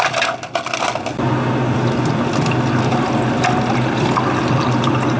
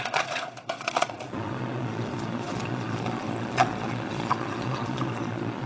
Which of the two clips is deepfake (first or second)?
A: second